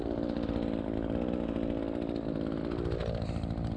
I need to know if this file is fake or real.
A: real